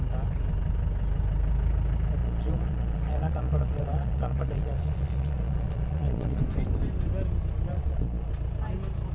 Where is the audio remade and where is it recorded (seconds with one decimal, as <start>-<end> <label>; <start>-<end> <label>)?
0.0-2.2 recorded; 2.2-6.4 remade; 6.4-7.7 recorded; 7.7-8.3 remade; 8.3-9.1 recorded